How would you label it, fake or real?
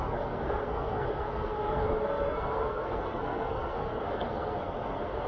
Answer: fake